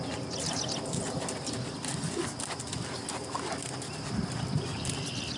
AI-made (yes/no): no